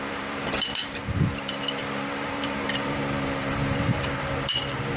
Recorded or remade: remade